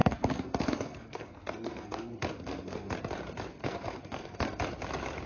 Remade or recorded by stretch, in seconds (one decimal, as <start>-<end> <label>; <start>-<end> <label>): 0.0-3.0 remade; 3.0-3.5 recorded; 3.5-4.6 remade; 4.6-5.3 recorded